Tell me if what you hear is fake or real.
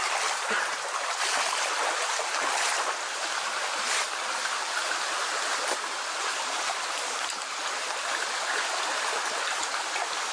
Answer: real